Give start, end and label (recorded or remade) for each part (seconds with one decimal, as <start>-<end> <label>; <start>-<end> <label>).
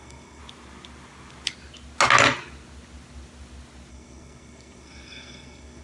0.0-0.4 remade; 0.4-3.9 recorded; 3.9-5.8 remade